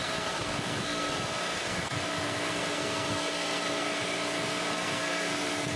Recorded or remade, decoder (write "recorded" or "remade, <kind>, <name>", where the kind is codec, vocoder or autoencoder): remade, codec, SNAC